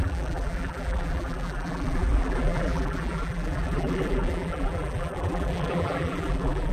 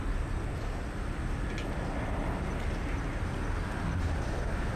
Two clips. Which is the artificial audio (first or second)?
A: first